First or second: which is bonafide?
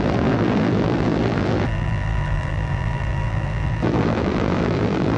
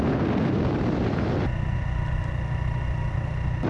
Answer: second